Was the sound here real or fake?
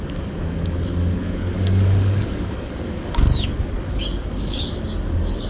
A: fake